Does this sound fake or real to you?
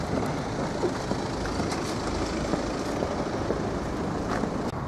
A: real